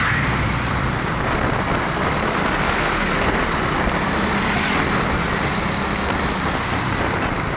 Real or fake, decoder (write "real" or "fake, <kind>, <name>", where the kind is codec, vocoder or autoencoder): real